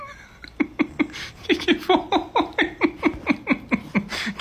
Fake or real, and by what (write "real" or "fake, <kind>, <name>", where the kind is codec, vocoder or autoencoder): real